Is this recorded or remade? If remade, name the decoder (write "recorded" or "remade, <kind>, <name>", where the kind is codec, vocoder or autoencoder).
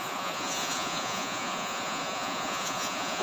remade, vocoder, Vocos